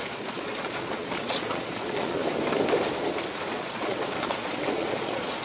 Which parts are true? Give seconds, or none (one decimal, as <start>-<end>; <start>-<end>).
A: 2.2-3.5